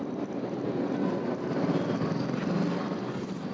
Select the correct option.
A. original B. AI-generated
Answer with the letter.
A